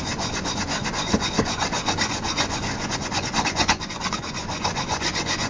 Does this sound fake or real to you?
fake